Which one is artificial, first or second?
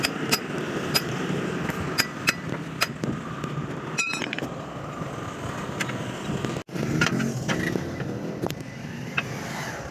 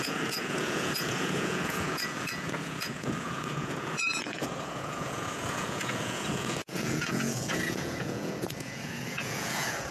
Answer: second